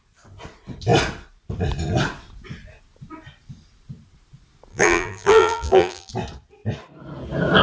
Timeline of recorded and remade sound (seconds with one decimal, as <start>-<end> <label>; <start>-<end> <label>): 0.0-4.7 recorded; 4.7-6.1 remade; 6.1-7.6 recorded